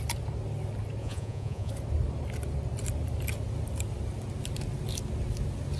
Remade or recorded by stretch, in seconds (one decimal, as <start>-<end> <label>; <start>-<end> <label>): 0.0-1.0 recorded; 1.0-1.7 remade; 1.7-5.8 recorded